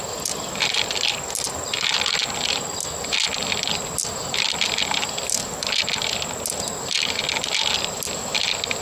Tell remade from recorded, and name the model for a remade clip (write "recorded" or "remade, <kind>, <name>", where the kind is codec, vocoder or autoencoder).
recorded